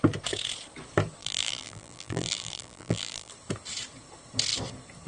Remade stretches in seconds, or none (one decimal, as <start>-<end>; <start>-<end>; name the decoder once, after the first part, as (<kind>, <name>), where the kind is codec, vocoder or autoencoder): 1.2-3.3 (vocoder, BigVGAN v2)